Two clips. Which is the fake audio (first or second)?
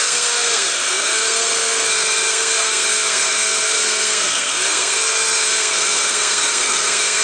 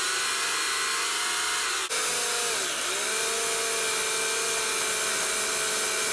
first